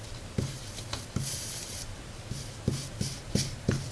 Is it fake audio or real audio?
real